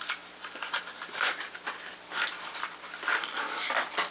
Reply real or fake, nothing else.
real